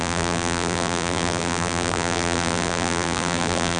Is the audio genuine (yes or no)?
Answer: no